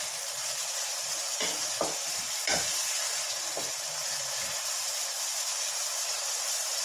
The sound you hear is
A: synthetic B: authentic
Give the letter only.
A